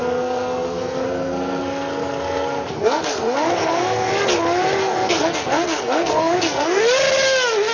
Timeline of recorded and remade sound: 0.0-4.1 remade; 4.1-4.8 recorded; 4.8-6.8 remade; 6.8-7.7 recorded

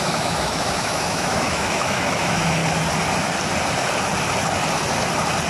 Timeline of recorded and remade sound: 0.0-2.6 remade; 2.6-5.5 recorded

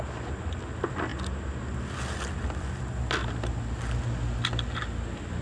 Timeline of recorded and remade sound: 0.0-5.4 recorded